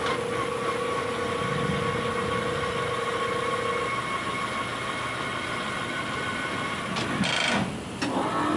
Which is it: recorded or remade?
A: recorded